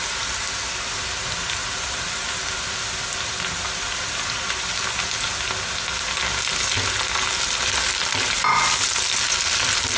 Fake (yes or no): no